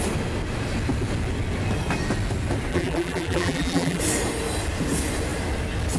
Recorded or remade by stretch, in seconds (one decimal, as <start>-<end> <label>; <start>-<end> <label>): 0.0-2.7 recorded; 2.7-4.0 remade; 4.0-6.0 recorded